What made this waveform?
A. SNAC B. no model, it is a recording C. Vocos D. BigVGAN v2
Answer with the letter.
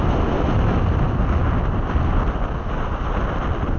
B